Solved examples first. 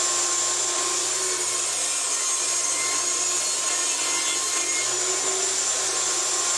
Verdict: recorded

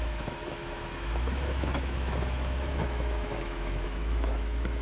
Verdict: remade